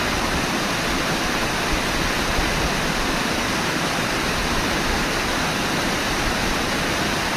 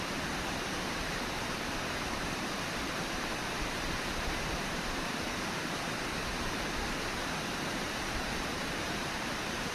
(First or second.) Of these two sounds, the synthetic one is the second